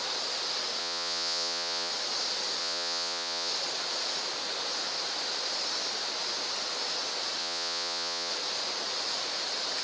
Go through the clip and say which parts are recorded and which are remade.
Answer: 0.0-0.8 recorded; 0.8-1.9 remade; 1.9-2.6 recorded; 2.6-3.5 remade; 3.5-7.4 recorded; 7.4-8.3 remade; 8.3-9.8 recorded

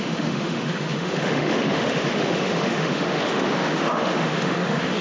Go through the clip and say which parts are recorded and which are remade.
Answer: 0.0-5.0 remade

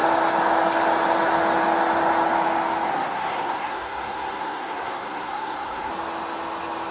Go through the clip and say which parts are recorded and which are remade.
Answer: 0.0-2.9 recorded; 2.9-5.9 remade; 5.9-6.9 recorded

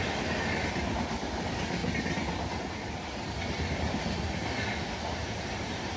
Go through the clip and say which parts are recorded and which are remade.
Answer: 0.0-1.8 remade; 1.8-2.6 recorded; 2.6-6.0 remade